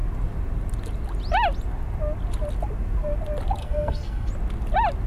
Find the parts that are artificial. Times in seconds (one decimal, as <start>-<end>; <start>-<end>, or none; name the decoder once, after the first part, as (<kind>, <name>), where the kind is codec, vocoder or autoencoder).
3.6-4.3 (codec, SNAC)

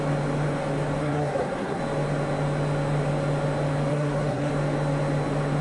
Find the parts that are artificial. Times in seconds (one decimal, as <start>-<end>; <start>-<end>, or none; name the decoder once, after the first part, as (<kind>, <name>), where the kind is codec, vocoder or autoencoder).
1.0-1.8 (codec, SNAC); 3.9-4.5

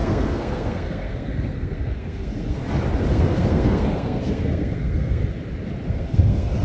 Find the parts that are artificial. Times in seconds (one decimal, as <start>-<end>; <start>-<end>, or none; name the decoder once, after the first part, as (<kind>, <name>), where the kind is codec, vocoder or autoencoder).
0.0-2.6 (codec, SNAC); 3.1-5.2; 5.9-6.6

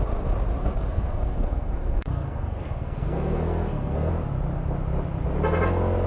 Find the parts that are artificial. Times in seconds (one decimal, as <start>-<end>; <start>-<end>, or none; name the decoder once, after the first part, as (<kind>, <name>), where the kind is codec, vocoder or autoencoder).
0.6-4.1 (codec, SNAC)

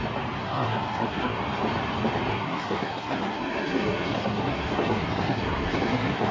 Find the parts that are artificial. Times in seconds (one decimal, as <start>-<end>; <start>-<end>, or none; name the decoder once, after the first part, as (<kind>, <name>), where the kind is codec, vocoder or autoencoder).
0.4-1.4 (codec, SNAC); 2.3-6.3

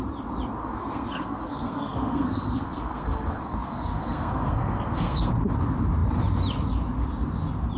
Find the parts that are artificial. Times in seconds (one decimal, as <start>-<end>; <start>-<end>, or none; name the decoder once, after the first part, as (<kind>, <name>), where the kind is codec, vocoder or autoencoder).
0.6-5.3 (codec, SNAC)